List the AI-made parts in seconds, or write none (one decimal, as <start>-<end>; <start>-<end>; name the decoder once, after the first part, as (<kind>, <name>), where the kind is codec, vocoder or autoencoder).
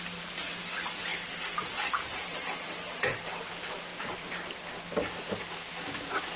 1.1-3.3 (vocoder, BigVGAN v2); 3.9-4.7